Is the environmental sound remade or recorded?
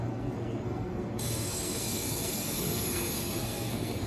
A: remade